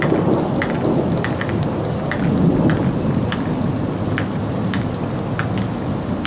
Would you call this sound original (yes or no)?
yes